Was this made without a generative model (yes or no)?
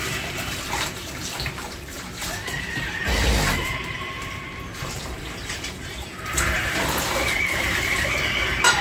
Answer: no